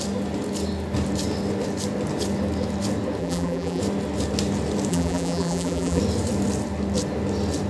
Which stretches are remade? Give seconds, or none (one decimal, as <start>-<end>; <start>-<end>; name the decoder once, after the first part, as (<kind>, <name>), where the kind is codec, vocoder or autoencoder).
3.2-3.8 (vocoder, BigVGAN v2); 4.9-6.0